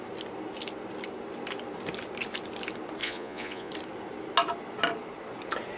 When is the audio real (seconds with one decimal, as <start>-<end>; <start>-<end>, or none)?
0.0-3.0; 3.7-5.8